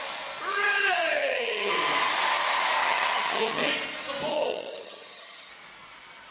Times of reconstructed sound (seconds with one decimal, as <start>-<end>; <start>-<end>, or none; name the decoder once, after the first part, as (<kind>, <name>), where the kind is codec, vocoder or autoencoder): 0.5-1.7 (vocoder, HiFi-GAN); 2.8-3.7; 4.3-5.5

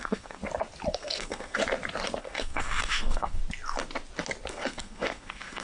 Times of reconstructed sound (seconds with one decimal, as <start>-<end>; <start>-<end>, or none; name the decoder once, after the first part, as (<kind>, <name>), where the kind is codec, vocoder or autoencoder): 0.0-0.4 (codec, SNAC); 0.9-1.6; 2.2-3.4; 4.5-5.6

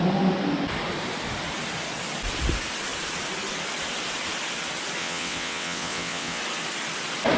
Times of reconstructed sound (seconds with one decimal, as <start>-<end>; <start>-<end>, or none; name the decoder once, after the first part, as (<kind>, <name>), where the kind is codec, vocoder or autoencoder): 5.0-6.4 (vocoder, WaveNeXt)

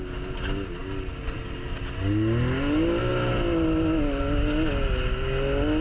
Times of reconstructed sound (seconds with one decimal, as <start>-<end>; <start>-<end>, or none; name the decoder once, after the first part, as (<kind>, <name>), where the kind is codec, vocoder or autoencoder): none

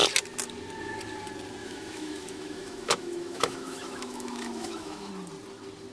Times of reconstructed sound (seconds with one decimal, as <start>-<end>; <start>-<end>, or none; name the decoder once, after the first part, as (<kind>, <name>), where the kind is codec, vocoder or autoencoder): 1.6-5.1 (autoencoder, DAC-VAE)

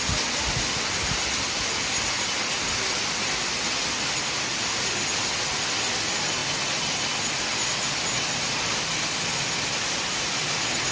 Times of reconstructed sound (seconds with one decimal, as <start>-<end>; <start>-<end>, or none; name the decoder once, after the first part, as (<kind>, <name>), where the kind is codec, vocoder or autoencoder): none

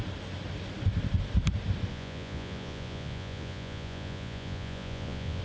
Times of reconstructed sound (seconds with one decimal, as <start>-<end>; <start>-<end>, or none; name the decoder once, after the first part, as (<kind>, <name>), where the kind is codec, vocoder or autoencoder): 1.9-5.4 (vocoder, Vocos)